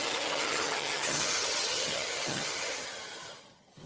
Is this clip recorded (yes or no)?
no